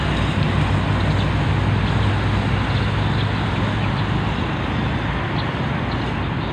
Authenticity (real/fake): real